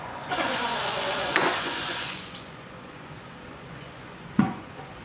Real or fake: fake